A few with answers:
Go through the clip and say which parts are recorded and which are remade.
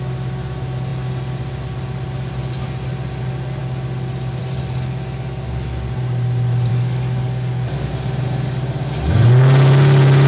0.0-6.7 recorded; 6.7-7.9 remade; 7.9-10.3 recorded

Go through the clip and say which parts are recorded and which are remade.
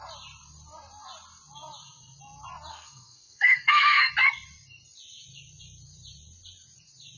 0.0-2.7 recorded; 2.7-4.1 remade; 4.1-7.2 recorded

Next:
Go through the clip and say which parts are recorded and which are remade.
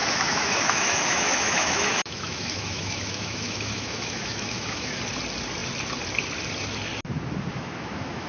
0.0-5.0 remade; 5.0-7.5 recorded; 7.5-8.3 remade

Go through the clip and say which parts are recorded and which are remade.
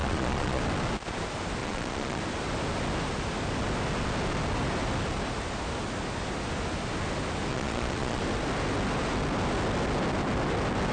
0.0-0.6 remade; 0.6-1.6 recorded; 1.6-2.2 remade; 2.2-7.5 recorded; 7.5-8.2 remade; 8.2-10.9 recorded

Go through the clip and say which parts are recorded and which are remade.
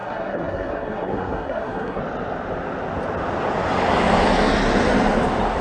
0.0-2.0 remade; 2.0-5.6 recorded